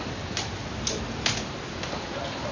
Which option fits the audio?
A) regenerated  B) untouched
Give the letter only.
B